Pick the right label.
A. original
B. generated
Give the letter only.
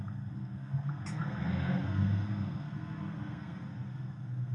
B